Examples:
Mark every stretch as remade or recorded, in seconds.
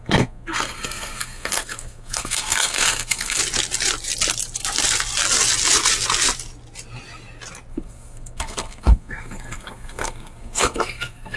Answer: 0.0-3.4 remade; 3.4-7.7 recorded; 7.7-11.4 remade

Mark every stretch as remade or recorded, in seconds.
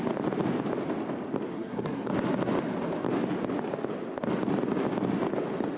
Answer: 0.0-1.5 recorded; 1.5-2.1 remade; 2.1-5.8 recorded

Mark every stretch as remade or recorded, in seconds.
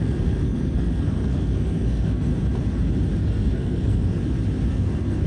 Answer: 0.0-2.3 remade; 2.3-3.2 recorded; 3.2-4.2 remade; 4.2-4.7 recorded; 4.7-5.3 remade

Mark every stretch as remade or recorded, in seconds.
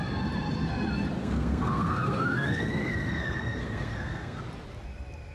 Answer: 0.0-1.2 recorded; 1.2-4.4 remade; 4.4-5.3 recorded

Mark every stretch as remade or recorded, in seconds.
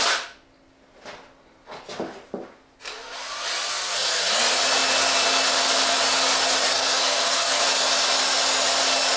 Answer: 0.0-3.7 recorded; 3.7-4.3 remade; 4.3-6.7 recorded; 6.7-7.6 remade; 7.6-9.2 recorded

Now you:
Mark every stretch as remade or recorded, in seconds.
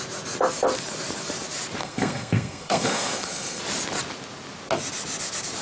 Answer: 0.0-1.8 recorded; 1.8-3.6 remade; 3.6-5.6 recorded